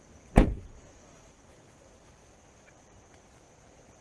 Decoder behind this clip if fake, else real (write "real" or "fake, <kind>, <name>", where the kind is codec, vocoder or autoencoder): fake, vocoder, BigVGAN v2